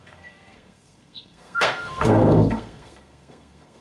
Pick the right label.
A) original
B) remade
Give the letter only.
B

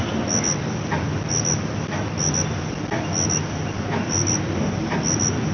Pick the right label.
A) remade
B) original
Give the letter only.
B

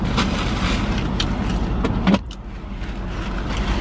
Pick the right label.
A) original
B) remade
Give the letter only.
A